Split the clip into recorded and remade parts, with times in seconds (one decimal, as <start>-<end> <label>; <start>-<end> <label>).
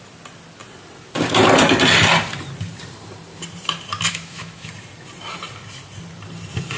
0.0-4.1 recorded; 4.1-4.7 remade; 4.7-6.8 recorded